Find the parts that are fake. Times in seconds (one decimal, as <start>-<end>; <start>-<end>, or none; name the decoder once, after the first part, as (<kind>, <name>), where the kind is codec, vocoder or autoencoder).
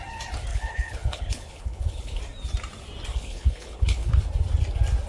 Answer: 0.5-2.2 (codec, HILCodec); 3.1-4.1